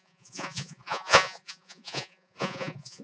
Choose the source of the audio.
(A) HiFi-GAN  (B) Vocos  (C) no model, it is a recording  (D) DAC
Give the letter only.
B